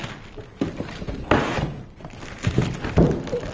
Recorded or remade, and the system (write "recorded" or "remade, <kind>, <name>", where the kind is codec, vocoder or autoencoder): recorded